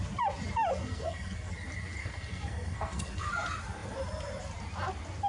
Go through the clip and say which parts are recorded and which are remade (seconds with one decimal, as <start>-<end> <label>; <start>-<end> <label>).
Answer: 0.0-0.8 recorded; 0.8-1.5 remade; 1.5-2.0 recorded; 2.0-3.3 remade; 3.3-5.3 recorded